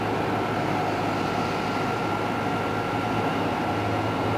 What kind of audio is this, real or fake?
real